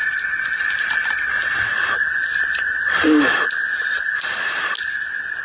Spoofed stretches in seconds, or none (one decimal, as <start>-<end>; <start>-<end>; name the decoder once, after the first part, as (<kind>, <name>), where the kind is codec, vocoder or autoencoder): none